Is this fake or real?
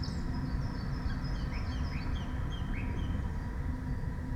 real